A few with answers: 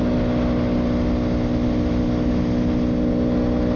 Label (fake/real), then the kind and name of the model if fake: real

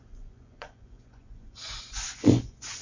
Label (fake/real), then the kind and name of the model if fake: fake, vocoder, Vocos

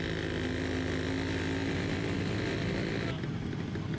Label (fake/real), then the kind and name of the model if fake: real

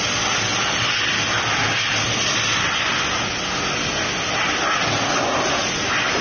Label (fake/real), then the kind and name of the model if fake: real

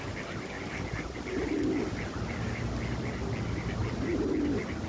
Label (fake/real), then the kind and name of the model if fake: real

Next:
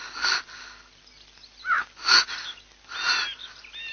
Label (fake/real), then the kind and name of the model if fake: real